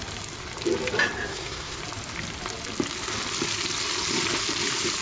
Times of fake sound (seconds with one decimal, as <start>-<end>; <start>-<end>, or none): 1.3-1.8